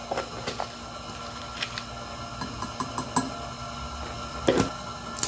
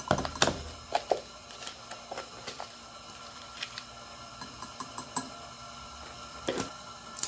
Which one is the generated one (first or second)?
second